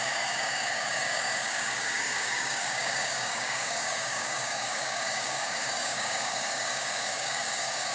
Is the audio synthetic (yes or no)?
yes